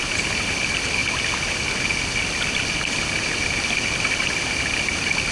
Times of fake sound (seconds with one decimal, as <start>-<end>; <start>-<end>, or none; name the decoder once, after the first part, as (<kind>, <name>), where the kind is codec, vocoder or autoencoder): 0.0-1.0 (vocoder, BigVGAN v2); 4.2-5.3